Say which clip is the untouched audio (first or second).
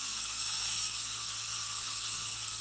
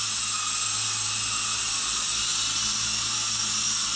second